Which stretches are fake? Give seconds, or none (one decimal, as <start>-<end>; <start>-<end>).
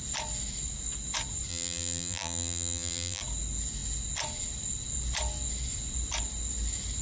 1.5-3.2